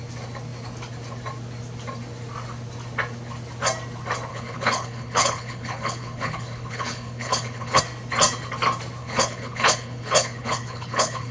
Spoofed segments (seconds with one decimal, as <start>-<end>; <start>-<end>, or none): 4.3-7.8; 9.0-11.3